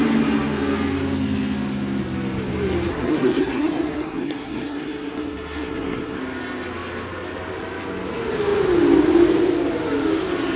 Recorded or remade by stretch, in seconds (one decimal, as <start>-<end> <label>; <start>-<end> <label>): 0.0-2.9 recorded; 2.9-6.2 remade; 6.2-10.6 recorded

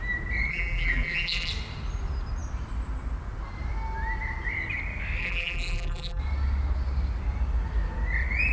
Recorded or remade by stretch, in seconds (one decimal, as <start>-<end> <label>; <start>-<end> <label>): 0.0-0.5 recorded; 0.5-1.5 remade; 1.5-5.2 recorded; 5.2-6.2 remade; 6.2-8.5 recorded